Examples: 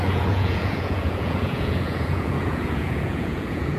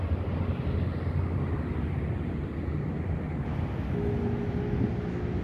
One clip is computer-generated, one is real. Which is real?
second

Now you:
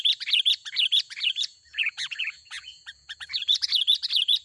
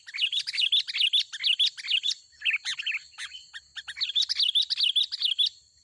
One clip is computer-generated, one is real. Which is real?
second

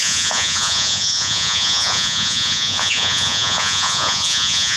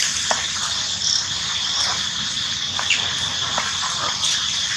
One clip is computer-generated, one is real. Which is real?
second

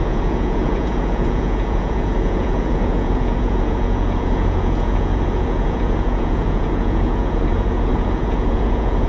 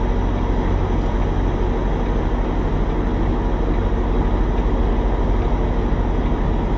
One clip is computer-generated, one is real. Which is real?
second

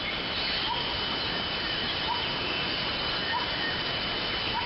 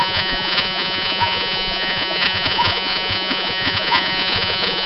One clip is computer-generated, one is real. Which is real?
first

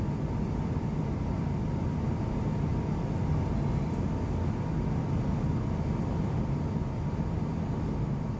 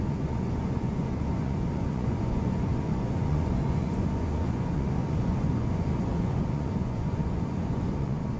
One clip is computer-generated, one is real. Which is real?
first